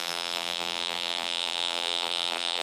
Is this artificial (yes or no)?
yes